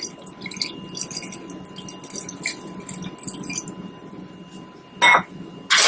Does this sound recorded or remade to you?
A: recorded